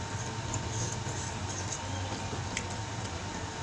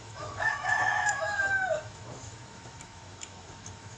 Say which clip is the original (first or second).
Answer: first